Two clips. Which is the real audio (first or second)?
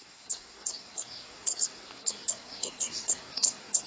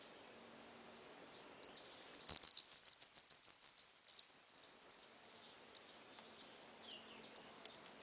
second